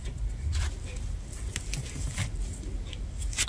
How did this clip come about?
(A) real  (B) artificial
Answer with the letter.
A